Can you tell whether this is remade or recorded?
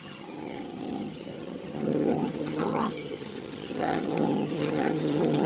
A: remade